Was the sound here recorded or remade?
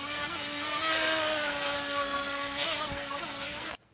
remade